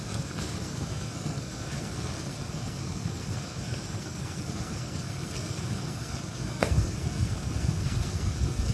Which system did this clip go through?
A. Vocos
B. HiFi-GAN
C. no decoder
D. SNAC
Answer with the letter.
D